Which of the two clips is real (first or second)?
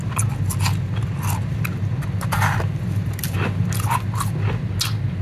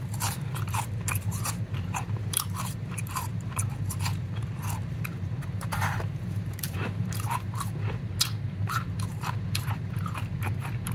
first